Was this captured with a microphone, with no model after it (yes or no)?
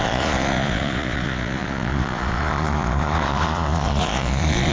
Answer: no